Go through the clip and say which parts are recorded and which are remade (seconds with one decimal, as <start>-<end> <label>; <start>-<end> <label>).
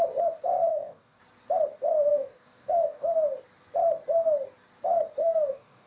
0.0-0.7 recorded; 0.7-1.2 remade; 1.2-2.1 recorded; 2.1-3.1 remade; 3.1-5.2 recorded; 5.2-5.9 remade